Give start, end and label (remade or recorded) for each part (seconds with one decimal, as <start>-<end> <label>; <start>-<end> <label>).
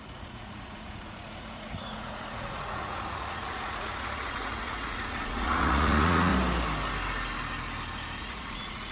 0.0-6.3 remade; 6.3-8.2 recorded; 8.2-8.9 remade